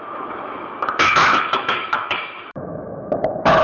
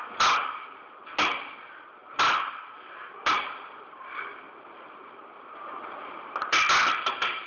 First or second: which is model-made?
first